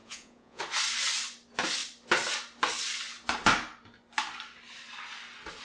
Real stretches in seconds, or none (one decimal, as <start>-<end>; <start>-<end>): 0.6-5.6